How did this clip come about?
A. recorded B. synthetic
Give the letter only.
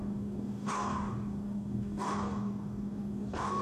B